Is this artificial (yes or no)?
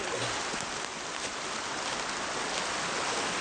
no